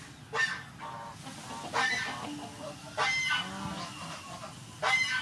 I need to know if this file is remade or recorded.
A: recorded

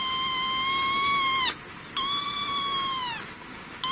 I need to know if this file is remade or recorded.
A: recorded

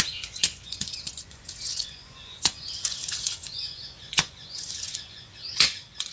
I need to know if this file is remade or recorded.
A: remade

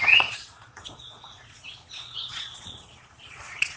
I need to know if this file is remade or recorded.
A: remade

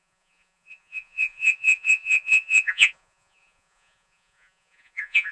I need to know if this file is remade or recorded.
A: remade